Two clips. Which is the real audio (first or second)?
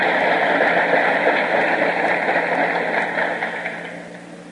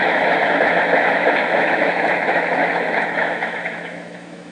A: first